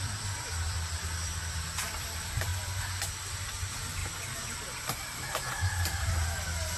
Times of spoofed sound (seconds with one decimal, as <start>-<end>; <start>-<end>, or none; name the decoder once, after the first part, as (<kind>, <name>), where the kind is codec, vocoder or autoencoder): 0.0-2.5 (vocoder, BigVGAN v2); 3.3-4.0

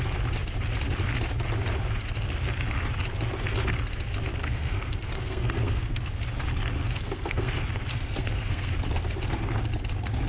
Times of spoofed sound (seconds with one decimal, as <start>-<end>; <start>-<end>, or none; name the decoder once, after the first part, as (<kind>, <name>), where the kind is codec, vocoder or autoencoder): 4.4-6.1 (codec, SNAC); 6.8-7.5; 7.9-8.7

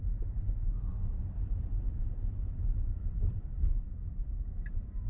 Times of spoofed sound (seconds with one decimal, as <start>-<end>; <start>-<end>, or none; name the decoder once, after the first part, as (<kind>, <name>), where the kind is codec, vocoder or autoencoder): 1.4-4.5 (vocoder, BigVGAN v2)

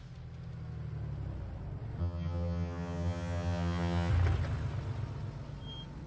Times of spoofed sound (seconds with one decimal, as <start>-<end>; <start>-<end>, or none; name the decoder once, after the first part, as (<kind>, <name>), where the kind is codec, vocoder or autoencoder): 2.0-4.1 (vocoder, HiFi-GAN)

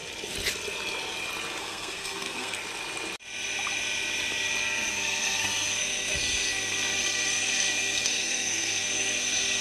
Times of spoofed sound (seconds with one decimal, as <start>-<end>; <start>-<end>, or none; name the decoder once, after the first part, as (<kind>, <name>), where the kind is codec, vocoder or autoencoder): 1.6-2.6 (codec, SNAC); 4.9-9.6

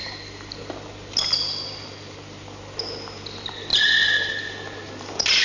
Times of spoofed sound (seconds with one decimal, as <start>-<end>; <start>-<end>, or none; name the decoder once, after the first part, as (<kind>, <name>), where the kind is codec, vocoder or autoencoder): none

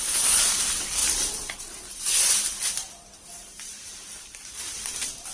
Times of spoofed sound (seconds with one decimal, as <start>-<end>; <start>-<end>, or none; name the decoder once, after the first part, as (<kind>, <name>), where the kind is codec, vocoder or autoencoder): 0.0-5.3 (vocoder, BigVGAN v2)

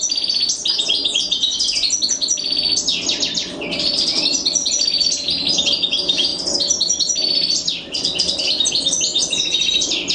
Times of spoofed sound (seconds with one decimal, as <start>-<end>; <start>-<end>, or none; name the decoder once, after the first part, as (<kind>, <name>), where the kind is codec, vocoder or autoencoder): 2.9-4.7 (vocoder, BigVGAN v2); 6.3-8.7